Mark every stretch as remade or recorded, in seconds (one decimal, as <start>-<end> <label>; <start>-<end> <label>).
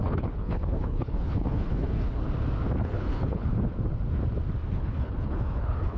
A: 0.0-2.2 remade; 2.2-2.8 recorded; 2.8-3.5 remade; 3.5-4.7 recorded; 4.7-6.0 remade